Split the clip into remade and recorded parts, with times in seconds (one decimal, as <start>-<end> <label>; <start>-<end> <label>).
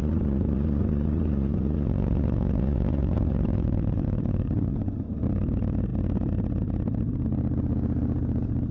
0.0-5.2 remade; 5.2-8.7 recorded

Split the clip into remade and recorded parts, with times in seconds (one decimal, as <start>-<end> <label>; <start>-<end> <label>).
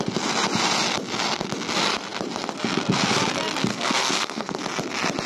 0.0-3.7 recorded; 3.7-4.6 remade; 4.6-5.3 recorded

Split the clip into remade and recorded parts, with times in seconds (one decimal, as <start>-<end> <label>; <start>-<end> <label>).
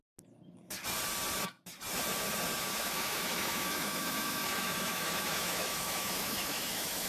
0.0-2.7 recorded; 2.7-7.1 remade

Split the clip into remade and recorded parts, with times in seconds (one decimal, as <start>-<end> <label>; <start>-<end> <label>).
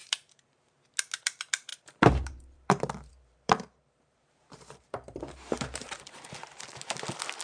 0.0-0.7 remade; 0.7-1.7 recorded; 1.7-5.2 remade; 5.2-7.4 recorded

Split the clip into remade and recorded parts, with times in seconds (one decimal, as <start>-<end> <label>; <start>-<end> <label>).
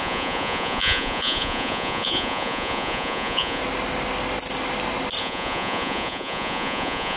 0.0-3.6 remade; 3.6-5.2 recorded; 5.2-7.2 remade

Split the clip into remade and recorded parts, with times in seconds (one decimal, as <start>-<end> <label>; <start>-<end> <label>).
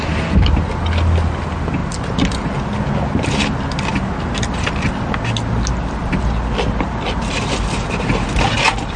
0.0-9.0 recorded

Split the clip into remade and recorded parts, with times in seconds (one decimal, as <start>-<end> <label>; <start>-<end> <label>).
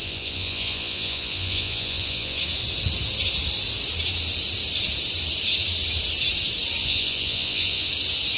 0.0-2.4 remade; 2.4-6.8 recorded; 6.8-7.9 remade; 7.9-8.4 recorded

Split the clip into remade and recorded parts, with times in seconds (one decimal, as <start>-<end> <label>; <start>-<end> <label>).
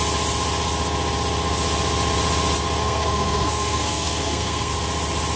0.0-2.8 recorded; 2.8-4.7 remade; 4.7-5.4 recorded